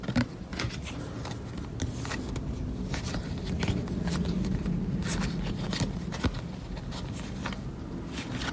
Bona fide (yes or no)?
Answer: yes